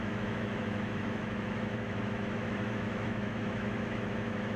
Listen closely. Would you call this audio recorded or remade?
remade